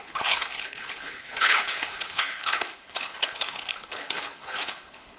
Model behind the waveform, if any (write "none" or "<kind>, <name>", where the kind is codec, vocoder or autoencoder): codec, HILCodec